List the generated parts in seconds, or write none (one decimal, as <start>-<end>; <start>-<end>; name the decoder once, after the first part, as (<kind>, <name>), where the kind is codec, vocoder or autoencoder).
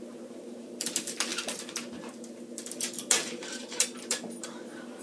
0.0-5.0 (vocoder, BigVGAN v2)